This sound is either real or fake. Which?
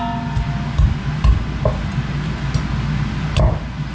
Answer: real